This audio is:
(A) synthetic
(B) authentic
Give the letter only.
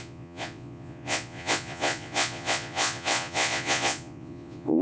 A